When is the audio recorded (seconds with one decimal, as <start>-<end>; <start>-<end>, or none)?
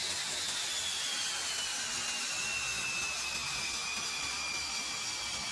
0.0-5.5